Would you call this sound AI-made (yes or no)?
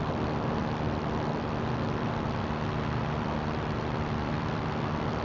yes